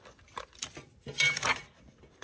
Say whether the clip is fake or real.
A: fake